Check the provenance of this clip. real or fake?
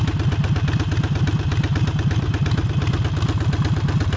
real